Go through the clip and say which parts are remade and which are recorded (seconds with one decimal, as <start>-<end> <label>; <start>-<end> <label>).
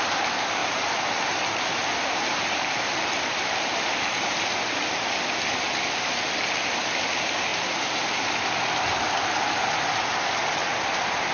0.0-0.6 recorded; 0.6-4.3 remade; 4.3-7.5 recorded; 7.5-8.3 remade; 8.3-10.6 recorded; 10.6-11.3 remade